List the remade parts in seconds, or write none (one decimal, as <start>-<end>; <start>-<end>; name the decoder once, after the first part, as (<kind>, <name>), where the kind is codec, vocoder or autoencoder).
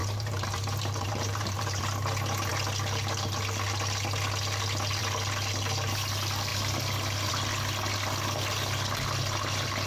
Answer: 0.0-1.8 (vocoder, BigVGAN v2)